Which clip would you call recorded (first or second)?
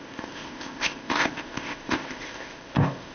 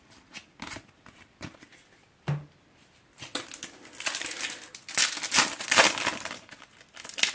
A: second